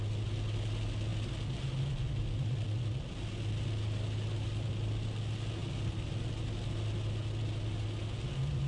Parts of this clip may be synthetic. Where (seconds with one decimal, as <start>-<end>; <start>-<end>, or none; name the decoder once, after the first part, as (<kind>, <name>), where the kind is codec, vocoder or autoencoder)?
none

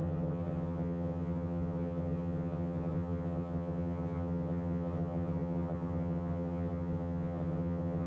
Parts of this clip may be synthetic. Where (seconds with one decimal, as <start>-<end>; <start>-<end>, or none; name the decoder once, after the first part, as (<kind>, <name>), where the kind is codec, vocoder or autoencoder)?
0.0-8.1 (vocoder, HiFi-GAN)

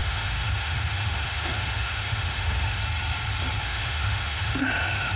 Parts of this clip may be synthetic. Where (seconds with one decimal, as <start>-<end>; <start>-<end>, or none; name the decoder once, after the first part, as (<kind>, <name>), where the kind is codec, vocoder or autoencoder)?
0.0-2.8 (autoencoder, DAC-VAE); 3.6-5.2

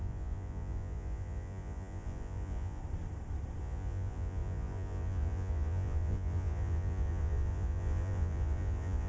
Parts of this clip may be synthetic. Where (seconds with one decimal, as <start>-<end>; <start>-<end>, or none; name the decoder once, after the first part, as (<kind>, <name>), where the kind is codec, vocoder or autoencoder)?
0.0-2.8 (vocoder, Vocos); 3.6-9.1

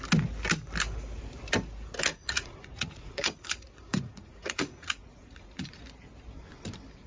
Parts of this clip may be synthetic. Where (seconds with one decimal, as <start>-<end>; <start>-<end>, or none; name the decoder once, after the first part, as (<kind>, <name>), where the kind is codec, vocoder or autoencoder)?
2.1-5.8 (vocoder, Vocos)